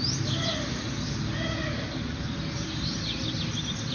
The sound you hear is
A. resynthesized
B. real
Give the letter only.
B